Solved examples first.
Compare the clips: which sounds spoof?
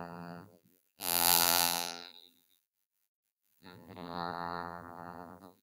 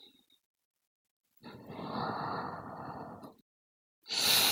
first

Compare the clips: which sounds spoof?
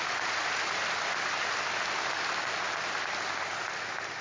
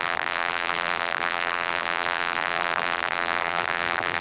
second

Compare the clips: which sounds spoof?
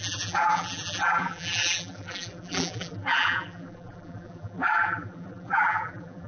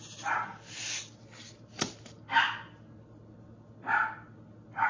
first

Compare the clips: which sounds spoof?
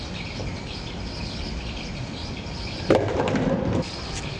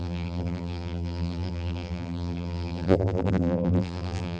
second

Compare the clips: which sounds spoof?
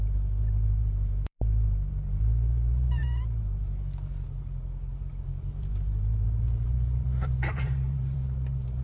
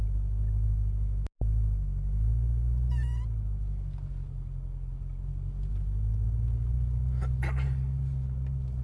first